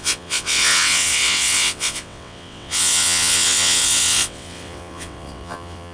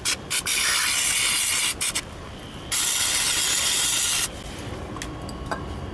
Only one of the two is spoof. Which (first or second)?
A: first